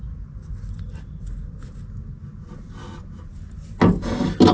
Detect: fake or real real